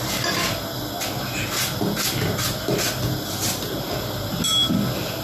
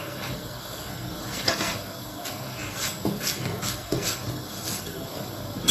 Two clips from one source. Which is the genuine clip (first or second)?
first